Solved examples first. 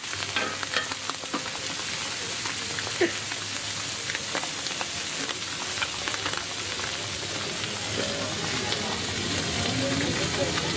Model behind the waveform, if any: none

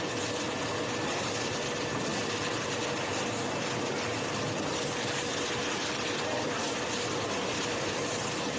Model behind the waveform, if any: vocoder, BigVGAN v2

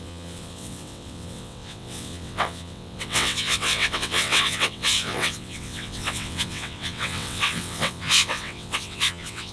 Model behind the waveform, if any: vocoder, WaveNeXt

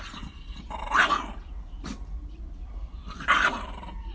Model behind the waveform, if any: none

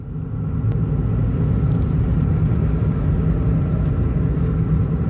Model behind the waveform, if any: none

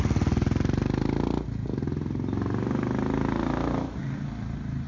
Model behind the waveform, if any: none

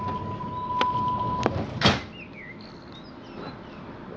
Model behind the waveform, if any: none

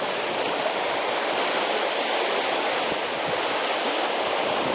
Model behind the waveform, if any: none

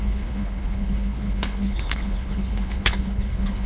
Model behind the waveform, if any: codec, HILCodec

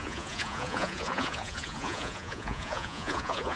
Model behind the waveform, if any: vocoder, Vocos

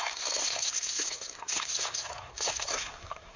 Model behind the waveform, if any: codec, SNAC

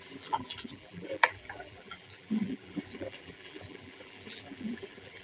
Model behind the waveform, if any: vocoder, BigVGAN v2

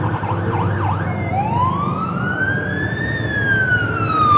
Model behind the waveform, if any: none